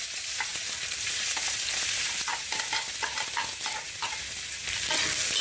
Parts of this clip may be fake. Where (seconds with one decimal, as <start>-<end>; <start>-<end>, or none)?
none